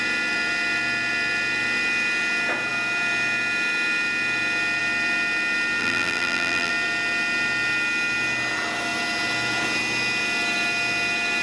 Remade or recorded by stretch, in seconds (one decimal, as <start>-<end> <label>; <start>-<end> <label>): 0.0-5.8 recorded; 5.8-6.7 remade; 6.7-11.4 recorded